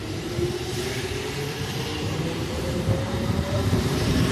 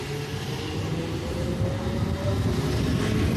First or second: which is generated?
first